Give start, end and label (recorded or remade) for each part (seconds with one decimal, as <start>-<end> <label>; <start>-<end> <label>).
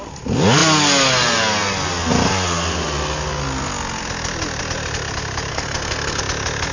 0.0-5.5 recorded; 5.5-6.2 remade; 6.2-6.7 recorded